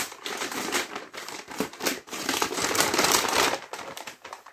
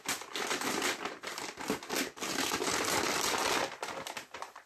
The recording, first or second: second